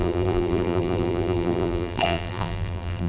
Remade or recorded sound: remade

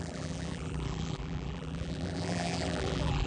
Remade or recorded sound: remade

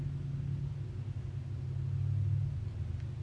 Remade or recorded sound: recorded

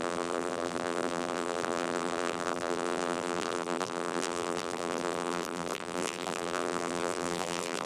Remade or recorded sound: remade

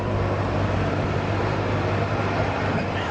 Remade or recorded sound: remade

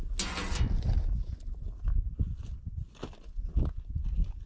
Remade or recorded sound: recorded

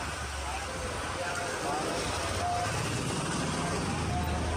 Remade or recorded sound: recorded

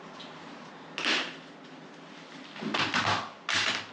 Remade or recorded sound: recorded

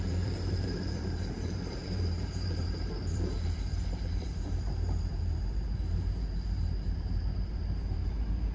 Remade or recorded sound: remade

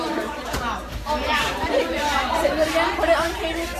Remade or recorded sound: remade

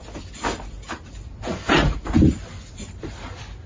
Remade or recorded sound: recorded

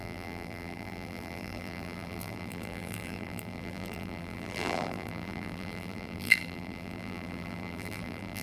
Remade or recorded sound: remade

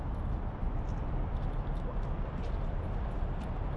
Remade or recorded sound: remade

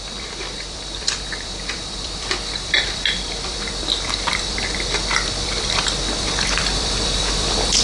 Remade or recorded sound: remade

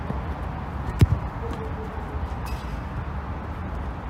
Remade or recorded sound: recorded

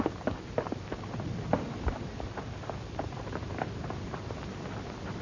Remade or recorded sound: remade